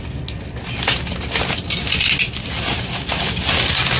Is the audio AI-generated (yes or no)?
no